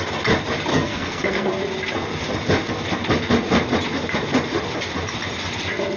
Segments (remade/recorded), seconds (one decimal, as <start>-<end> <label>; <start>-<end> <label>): 0.0-0.7 recorded; 0.7-1.5 remade; 1.5-6.0 recorded